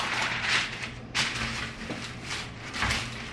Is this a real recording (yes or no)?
no